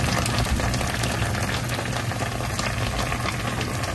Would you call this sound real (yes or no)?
yes